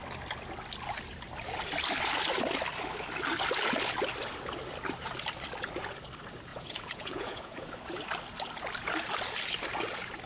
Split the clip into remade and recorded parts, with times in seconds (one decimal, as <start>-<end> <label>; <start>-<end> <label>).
0.0-6.5 recorded; 6.5-7.7 remade; 7.7-10.3 recorded